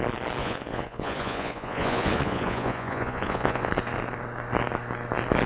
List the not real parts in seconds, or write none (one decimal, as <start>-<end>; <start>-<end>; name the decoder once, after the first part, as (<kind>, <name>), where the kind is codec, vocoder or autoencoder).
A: 0.4-3.7 (vocoder, Vocos)